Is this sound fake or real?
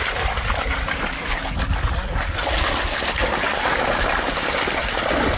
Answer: fake